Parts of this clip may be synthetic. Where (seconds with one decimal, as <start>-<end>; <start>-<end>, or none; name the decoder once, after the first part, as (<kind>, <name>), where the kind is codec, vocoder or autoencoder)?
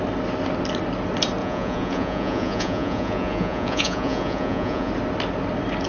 1.4-4.9 (vocoder, Vocos)